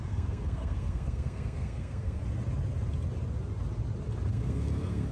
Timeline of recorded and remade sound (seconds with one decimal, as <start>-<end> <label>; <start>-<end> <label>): 0.0-2.2 remade; 2.2-4.3 recorded; 4.3-5.1 remade